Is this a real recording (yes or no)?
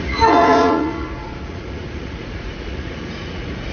no